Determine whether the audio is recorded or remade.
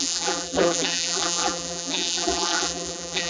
remade